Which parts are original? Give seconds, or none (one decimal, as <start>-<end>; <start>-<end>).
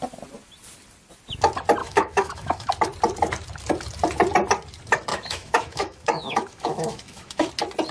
0.0-1.8; 2.7-5.1; 7.5-7.9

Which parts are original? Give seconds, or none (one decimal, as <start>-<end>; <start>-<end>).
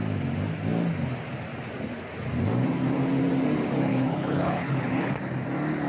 0.0-3.9; 5.1-5.9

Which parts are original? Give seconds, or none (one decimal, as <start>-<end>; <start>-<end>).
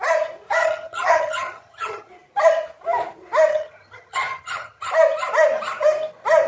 0.0-0.6; 2.1-3.5; 4.9-6.5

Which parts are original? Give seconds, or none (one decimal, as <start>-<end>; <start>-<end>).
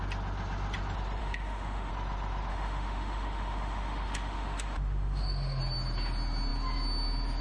0.0-1.2; 1.9-2.5; 5.6-7.4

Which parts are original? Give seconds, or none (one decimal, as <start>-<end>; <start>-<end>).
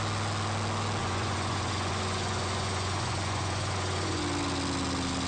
0.0-1.0; 4.2-5.3